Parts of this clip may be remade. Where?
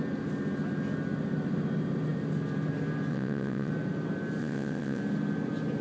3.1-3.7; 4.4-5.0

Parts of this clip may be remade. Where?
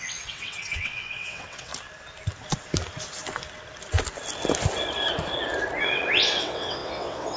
0.0-1.7; 5.8-7.4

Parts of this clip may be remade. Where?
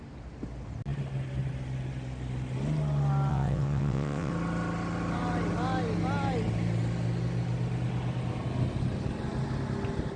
3.3-4.3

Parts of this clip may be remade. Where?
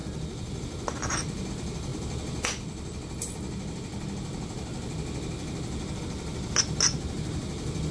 none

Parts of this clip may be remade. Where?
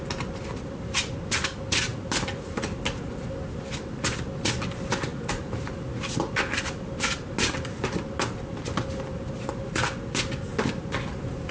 none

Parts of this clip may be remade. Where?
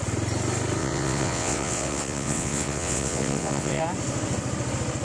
0.8-3.8